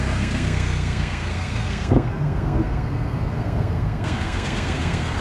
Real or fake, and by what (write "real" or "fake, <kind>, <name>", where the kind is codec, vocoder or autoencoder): fake, codec, SNAC